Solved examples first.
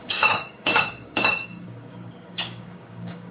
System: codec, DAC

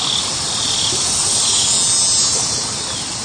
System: none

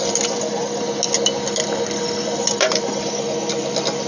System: none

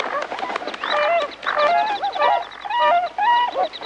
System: none